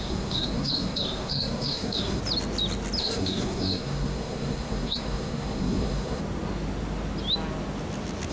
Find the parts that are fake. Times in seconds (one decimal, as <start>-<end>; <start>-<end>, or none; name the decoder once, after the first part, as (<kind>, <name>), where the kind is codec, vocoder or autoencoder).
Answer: 0.0-2.2 (codec, SNAC); 3.0-6.2